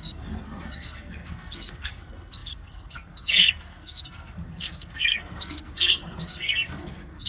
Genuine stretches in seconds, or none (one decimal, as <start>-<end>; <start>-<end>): none